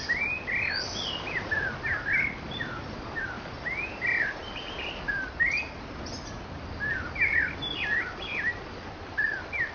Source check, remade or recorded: recorded